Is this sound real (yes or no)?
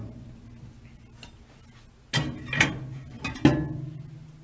yes